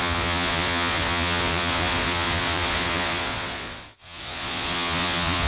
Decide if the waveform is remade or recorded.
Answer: remade